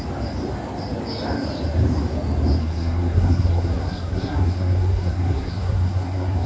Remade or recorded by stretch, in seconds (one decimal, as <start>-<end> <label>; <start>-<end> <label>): 0.0-2.6 recorded; 2.6-6.5 remade